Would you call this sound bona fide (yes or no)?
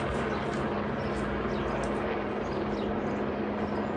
yes